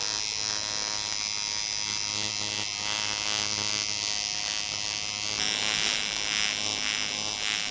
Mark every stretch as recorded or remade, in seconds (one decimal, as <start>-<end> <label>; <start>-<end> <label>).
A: 0.0-7.7 recorded